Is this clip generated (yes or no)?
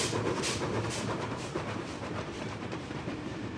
yes